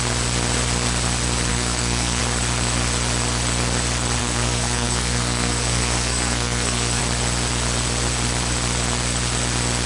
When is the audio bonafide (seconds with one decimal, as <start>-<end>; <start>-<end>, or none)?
0.0-1.5; 2.2-4.2; 7.0-9.9